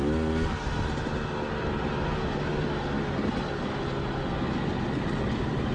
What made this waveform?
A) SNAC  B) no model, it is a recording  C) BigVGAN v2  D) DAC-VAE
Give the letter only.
B